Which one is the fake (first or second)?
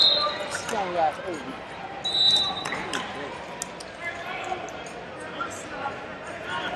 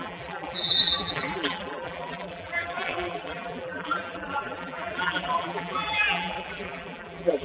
second